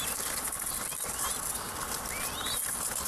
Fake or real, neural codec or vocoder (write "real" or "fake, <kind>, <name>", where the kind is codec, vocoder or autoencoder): real